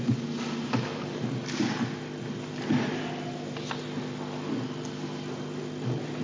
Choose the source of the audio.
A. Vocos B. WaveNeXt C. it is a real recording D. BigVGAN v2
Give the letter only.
C